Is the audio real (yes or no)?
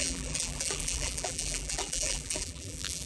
no